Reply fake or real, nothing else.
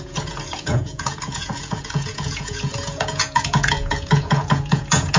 fake